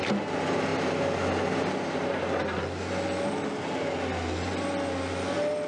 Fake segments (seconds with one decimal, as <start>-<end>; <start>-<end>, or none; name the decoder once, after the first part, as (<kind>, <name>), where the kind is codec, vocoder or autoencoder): none